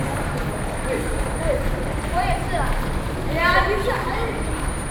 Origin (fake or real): fake